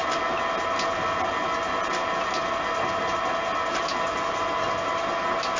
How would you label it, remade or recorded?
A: recorded